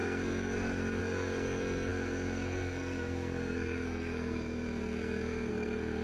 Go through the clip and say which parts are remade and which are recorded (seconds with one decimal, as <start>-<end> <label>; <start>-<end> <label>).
0.0-6.0 remade